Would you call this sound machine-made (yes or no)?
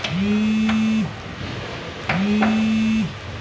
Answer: no